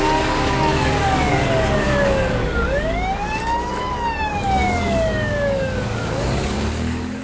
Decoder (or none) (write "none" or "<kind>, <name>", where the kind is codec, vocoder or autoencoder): codec, DAC